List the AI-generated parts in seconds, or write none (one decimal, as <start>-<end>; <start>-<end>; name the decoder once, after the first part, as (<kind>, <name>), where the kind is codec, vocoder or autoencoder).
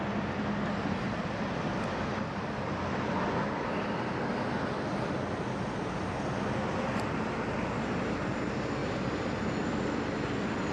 none